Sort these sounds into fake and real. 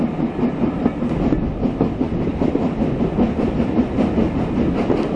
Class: real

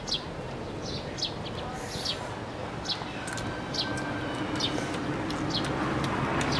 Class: real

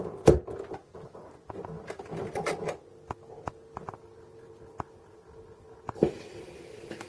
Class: real